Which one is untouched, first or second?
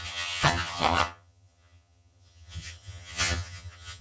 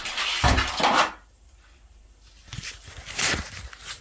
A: second